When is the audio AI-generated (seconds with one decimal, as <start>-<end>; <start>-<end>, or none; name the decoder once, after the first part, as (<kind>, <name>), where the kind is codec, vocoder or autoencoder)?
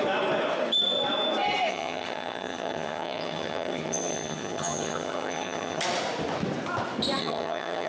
1.7-5.8 (vocoder, HiFi-GAN); 7.2-7.9